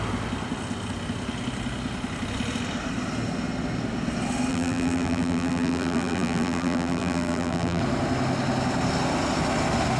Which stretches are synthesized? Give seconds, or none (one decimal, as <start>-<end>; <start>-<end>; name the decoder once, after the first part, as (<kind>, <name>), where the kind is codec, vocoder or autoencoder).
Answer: 4.5-7.8 (vocoder, BigVGAN v2)